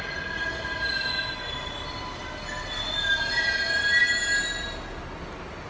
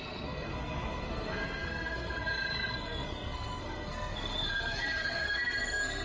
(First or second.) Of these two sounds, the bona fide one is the first